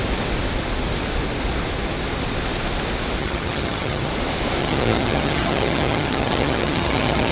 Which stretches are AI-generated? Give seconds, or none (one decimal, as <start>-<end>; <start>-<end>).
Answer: 3.2-4.1; 4.6-7.3